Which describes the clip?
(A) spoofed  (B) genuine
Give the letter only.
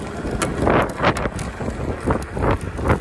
B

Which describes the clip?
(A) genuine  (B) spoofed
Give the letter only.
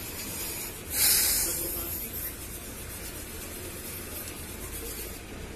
A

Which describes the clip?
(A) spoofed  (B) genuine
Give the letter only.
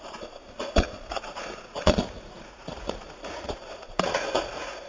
A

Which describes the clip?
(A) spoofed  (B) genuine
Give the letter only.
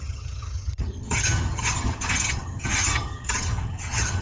A